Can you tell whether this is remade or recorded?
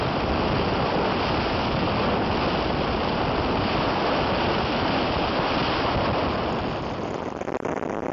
recorded